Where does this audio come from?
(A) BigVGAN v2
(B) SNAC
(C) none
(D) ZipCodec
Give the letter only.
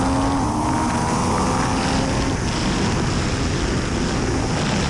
C